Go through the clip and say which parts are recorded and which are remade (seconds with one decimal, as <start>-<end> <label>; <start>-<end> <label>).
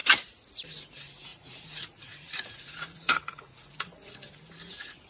0.0-1.3 recorded; 1.3-4.1 remade; 4.1-5.1 recorded